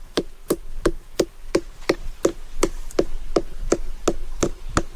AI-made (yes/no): no